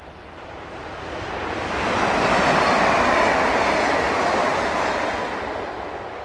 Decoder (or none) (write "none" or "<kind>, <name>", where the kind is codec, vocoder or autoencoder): none